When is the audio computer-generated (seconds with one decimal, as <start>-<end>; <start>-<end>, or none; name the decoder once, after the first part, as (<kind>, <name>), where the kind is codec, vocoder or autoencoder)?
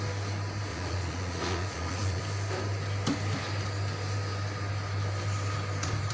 0.7-2.2 (vocoder, Vocos)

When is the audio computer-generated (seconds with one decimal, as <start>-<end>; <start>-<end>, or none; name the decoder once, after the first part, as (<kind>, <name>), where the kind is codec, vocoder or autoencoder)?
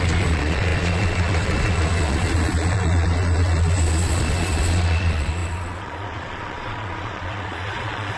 0.0-8.2 (vocoder, Vocos)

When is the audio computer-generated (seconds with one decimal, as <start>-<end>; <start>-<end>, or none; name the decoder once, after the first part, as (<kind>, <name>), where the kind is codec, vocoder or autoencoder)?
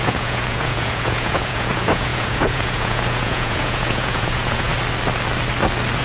0.0-4.7 (vocoder, Vocos)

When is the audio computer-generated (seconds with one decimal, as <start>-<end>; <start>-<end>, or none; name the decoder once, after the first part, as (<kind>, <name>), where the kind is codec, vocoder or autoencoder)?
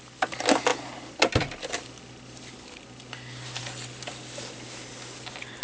none